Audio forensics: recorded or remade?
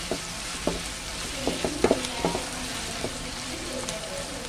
recorded